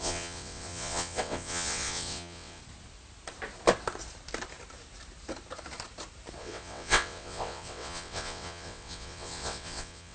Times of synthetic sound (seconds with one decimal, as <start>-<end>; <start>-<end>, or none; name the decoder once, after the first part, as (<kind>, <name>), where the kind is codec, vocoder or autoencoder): 0.0-2.6 (vocoder, WaveNeXt); 6.4-10.1